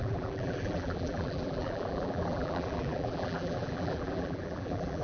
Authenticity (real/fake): fake